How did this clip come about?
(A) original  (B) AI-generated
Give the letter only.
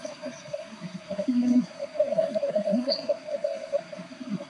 B